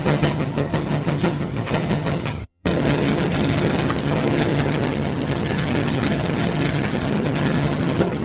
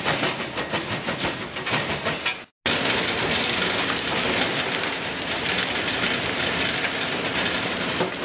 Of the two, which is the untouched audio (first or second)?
second